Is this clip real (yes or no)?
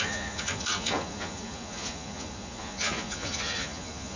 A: no